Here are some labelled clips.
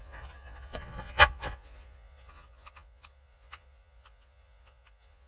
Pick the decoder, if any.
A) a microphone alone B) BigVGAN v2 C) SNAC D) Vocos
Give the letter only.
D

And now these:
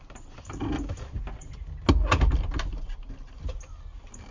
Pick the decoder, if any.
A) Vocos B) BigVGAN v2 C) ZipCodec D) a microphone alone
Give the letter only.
D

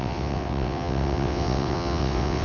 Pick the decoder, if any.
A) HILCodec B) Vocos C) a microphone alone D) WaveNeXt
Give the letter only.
D